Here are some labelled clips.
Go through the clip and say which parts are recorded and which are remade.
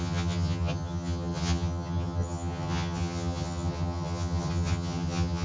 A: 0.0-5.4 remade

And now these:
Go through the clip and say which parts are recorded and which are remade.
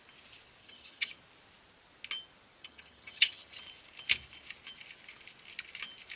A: 0.0-0.6 recorded; 0.6-1.1 remade; 1.1-2.6 recorded; 2.6-3.6 remade; 3.6-6.2 recorded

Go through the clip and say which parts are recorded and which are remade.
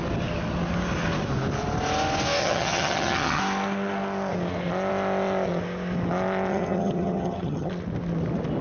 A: 0.0-2.4 recorded; 2.4-3.4 remade; 3.4-6.5 recorded; 6.5-7.7 remade; 7.7-8.6 recorded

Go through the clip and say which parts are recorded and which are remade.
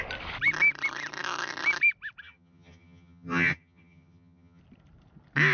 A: 0.0-2.2 recorded; 2.2-4.6 remade; 4.6-5.5 recorded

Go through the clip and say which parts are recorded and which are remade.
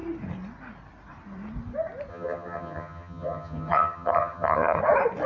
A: 0.0-2.1 recorded; 2.1-4.8 remade; 4.8-5.3 recorded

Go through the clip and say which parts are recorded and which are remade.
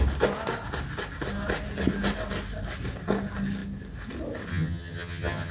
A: 0.0-4.5 recorded; 4.5-5.5 remade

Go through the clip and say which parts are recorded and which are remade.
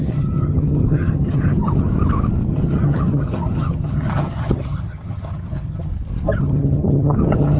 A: 0.0-1.9 remade; 1.9-2.5 recorded; 2.5-5.9 remade; 5.9-6.4 recorded; 6.4-7.6 remade